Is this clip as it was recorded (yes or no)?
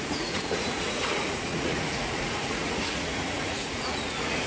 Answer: no